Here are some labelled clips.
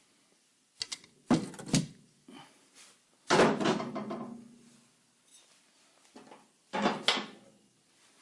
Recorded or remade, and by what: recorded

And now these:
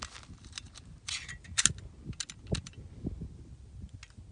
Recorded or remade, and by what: recorded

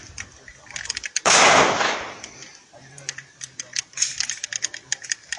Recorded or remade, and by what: recorded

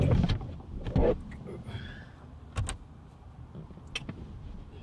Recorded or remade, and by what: recorded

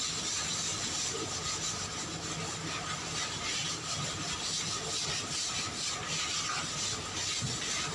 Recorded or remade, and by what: recorded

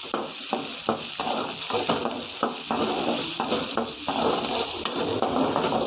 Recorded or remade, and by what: recorded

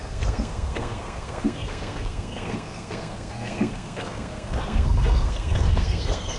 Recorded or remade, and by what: remade, codec, SNAC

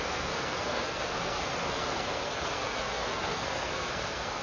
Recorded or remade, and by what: remade, codec, SNAC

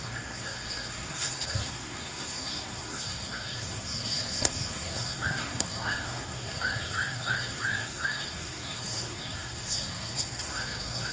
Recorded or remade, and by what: remade, codec, SNAC